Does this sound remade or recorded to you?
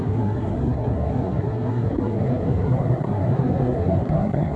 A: remade